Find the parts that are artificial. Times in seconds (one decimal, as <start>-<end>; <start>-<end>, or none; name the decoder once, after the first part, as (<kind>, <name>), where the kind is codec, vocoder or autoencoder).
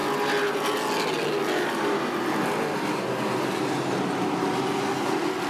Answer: none